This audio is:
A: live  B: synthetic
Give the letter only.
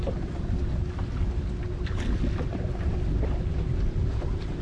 A